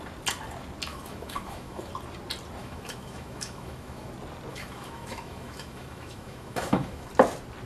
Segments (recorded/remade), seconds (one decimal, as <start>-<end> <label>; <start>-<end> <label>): 0.0-0.9 recorded; 0.9-1.9 remade; 1.9-2.6 recorded; 2.6-4.1 remade; 4.1-4.5 recorded; 4.5-7.1 remade; 7.1-7.7 recorded